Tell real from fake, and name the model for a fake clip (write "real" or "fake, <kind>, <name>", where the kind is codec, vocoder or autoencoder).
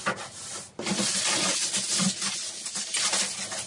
real